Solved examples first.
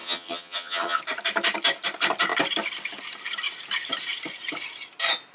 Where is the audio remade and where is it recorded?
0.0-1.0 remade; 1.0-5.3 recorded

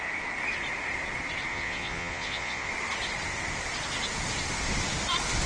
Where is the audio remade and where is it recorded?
0.0-1.5 recorded; 1.5-2.7 remade; 2.7-5.5 recorded

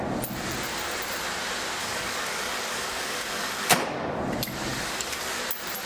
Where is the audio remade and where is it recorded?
0.0-1.8 recorded; 1.8-4.2 remade; 4.2-4.7 recorded; 4.7-5.4 remade; 5.4-5.9 recorded